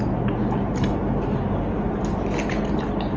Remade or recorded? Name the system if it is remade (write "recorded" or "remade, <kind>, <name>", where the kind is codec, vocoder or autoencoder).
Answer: recorded